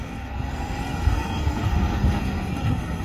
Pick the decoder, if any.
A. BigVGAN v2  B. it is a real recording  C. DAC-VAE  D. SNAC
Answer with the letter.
D